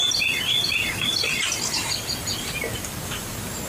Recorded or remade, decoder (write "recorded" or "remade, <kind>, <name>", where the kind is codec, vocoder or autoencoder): recorded